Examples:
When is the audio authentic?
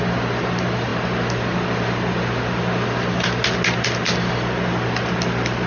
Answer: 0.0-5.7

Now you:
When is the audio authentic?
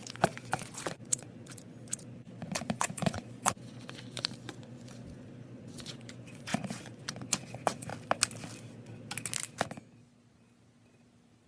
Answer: 7.9-11.5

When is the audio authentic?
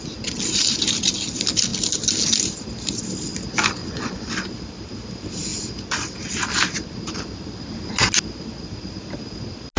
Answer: 0.0-3.8; 4.3-9.8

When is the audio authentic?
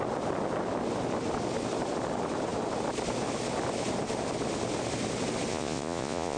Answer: 0.0-5.5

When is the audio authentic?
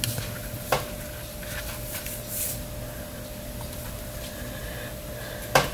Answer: 0.0-5.7